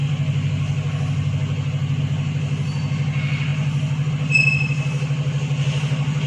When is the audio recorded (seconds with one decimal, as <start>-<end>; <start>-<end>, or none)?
0.0-6.3